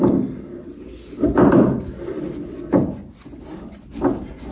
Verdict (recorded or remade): recorded